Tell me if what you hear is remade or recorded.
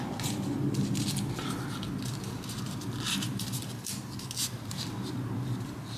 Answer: recorded